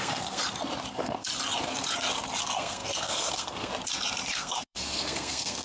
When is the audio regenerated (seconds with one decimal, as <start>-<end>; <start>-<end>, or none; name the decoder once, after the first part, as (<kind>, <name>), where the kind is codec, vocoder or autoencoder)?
0.0-0.4 (codec, SNAC); 0.9-1.3; 2.4-3.7; 4.3-5.6

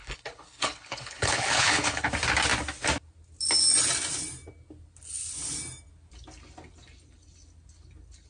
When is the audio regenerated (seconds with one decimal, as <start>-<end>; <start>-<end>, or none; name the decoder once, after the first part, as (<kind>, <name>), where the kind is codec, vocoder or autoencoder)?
0.0-2.1 (codec, HILCodec)